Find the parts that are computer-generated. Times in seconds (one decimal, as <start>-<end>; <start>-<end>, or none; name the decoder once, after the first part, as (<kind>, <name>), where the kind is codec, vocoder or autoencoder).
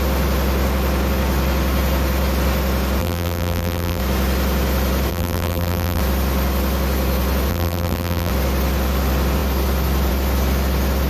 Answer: 3.0-4.0 (vocoder, BigVGAN v2); 5.1-6.0; 7.5-8.3